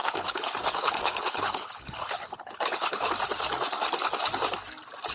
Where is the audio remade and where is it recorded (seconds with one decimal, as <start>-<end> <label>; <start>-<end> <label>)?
0.0-3.1 remade; 3.1-5.1 recorded